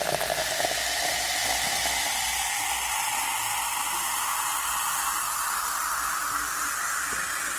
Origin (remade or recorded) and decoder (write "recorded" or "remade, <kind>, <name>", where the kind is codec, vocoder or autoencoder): recorded